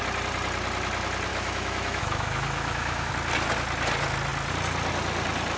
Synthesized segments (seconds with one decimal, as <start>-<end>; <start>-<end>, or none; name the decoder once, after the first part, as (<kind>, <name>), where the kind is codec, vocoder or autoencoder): 1.3-3.1 (autoencoder, DAC-VAE)